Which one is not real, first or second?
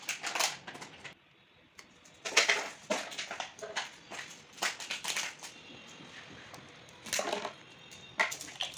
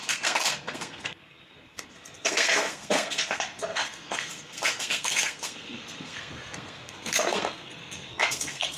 second